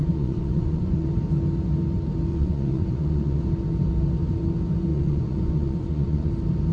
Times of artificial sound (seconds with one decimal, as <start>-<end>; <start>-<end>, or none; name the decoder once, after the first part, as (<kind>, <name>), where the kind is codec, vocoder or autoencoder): 0.0-1.1 (vocoder, Vocos); 2.3-3.4; 4.9-6.3